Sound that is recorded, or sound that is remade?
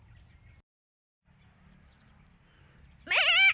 recorded